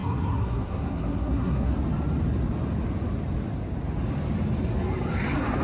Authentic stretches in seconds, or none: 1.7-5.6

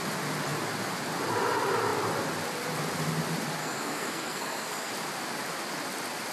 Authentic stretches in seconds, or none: 0.0-3.6; 4.9-6.3

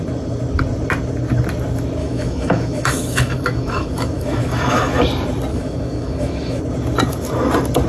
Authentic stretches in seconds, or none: 0.0-2.0; 5.0-5.5; 6.6-7.9

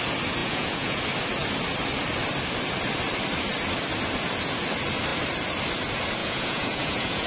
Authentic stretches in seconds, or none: 0.0-0.4; 1.0-6.2

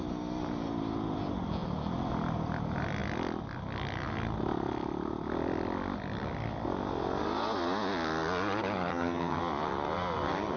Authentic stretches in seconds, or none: 0.0-8.9; 9.4-10.6

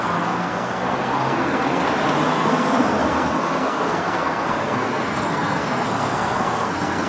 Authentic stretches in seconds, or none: 1.8-2.3